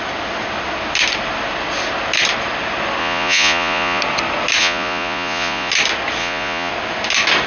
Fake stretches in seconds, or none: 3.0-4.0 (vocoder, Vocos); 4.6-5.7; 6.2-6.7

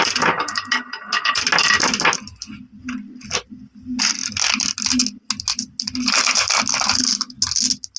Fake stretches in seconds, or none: none

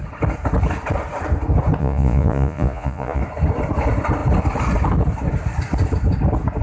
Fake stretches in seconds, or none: 1.8-3.2 (vocoder, Vocos)

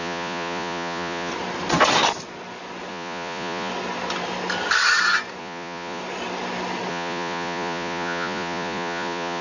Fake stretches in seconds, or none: 0.0-1.3 (vocoder, Vocos); 2.9-3.7; 5.4-6.0; 6.9-9.4

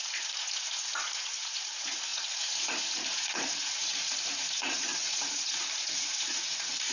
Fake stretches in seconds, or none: 0.0-6.9 (vocoder, Vocos)

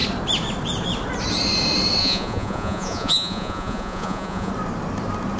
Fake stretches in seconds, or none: 2.0-4.5 (vocoder, Vocos)